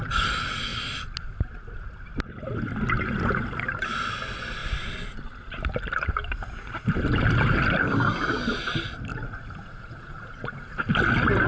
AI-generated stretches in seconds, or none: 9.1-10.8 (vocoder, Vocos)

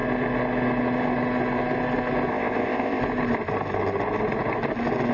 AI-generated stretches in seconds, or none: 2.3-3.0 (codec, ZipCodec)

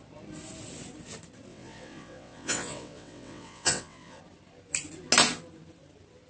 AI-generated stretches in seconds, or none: 1.5-4.2 (vocoder, WaveNeXt)